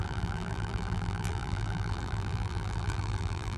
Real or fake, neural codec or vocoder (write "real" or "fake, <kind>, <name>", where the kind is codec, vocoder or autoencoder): fake, vocoder, BigVGAN v2